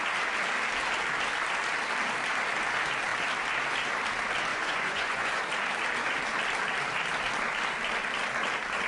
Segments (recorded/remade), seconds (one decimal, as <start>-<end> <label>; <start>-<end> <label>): 0.0-4.5 recorded; 4.5-5.4 remade; 5.4-8.9 recorded